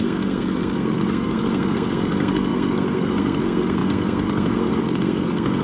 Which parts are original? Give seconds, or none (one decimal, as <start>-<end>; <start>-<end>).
none